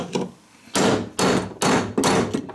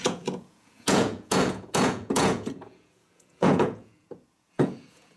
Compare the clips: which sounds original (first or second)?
first